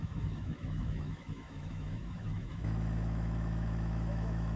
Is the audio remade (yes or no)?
yes